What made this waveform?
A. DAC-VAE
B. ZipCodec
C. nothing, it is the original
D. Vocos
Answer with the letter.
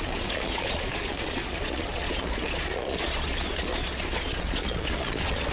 D